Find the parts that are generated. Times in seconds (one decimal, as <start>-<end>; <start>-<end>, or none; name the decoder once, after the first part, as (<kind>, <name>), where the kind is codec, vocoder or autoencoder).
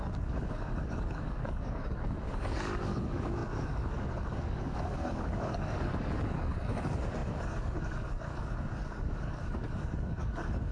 0.0-10.7 (codec, DAC)